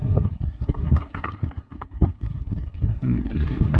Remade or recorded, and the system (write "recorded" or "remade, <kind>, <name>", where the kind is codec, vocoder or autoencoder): remade, codec, SNAC